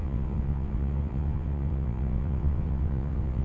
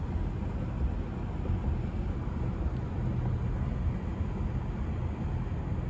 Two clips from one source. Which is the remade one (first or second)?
first